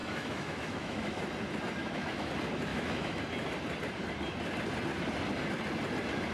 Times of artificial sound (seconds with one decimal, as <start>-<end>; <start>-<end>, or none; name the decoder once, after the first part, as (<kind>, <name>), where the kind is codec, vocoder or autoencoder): 0.0-1.2 (autoencoder, DAC-VAE); 1.8-2.3; 2.7-3.2